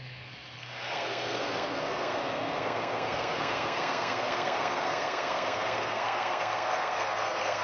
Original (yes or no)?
no